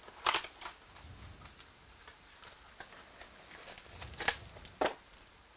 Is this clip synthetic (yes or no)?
no